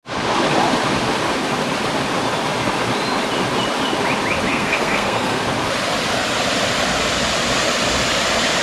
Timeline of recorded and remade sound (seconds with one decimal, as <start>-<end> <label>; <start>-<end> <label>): 0.0-4.5 recorded; 4.5-5.4 remade; 5.4-8.6 recorded